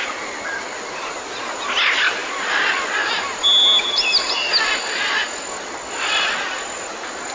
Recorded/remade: recorded